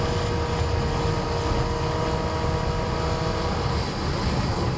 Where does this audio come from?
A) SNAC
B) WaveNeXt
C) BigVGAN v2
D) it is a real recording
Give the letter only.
D